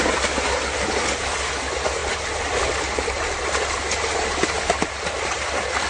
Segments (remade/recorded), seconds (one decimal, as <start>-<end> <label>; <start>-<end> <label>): 0.0-5.9 recorded